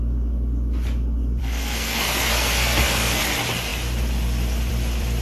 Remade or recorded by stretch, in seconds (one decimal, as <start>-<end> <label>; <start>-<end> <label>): 0.0-1.4 recorded; 1.4-3.2 remade; 3.2-5.2 recorded